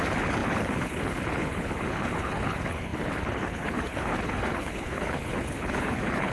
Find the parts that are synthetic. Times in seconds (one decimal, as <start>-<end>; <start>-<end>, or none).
0.0-6.3